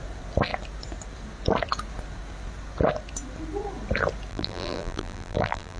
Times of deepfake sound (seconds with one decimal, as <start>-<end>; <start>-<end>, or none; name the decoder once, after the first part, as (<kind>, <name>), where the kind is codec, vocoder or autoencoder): 4.3-5.8 (vocoder, BigVGAN v2)